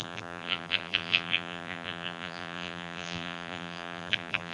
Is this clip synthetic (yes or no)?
yes